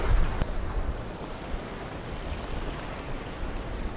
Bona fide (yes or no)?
yes